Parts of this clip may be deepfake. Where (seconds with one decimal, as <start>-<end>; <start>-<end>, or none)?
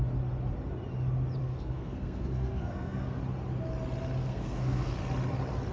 1.4-3.2; 4.2-4.9